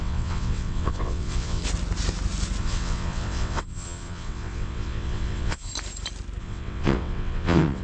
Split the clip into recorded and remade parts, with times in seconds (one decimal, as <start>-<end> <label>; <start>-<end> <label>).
0.0-1.6 remade; 1.6-2.6 recorded; 2.6-5.7 remade; 5.7-6.4 recorded; 6.4-7.8 remade